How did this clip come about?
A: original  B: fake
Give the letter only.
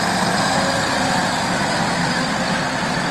A